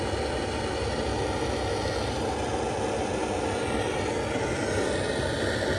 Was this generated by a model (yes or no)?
no